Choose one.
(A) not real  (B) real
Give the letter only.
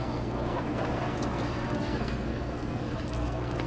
A